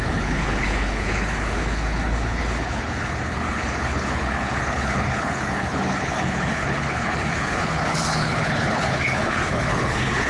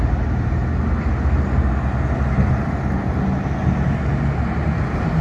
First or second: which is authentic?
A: second